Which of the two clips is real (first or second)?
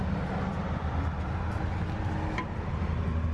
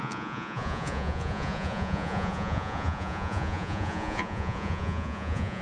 first